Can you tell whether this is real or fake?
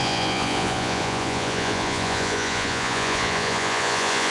fake